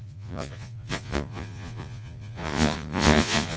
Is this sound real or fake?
fake